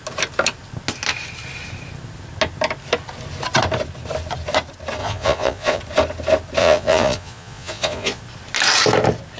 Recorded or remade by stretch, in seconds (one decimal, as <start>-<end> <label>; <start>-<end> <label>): 0.0-5.0 recorded; 5.0-5.8 remade; 5.8-6.6 recorded; 6.6-8.2 remade; 8.2-9.4 recorded